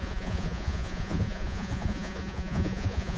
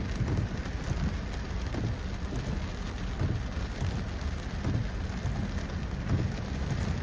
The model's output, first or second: first